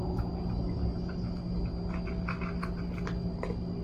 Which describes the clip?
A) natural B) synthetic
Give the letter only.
A